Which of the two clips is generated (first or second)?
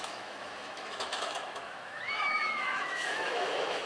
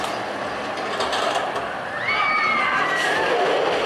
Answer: first